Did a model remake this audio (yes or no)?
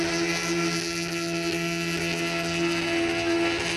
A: no